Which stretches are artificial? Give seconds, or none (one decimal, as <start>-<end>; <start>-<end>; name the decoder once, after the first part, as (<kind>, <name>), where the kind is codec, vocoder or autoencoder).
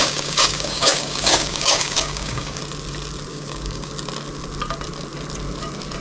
0.0-2.6 (codec, DAC); 3.3-3.9